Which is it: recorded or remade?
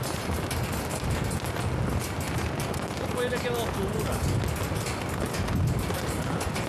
recorded